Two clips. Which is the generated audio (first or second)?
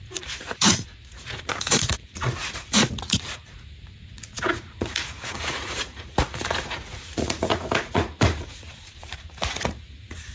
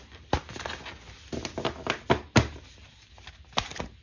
first